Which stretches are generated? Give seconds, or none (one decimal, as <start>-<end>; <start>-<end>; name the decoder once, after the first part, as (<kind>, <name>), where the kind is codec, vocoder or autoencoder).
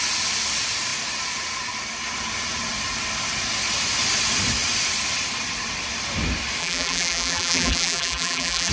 6.6-8.7 (vocoder, BigVGAN v2)